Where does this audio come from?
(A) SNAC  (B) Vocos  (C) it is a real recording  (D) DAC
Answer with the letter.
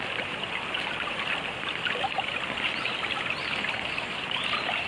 C